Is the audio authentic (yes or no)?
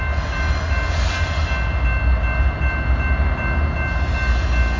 yes